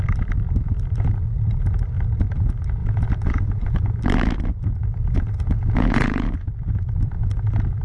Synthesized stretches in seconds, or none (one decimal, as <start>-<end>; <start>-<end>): 2.8-4.0; 4.8-6.4